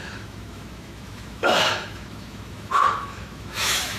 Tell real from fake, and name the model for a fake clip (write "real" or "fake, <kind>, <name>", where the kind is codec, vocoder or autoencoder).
fake, autoencoder, DAC-VAE